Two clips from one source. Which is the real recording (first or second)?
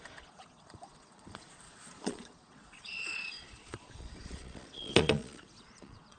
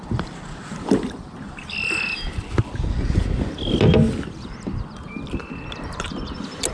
second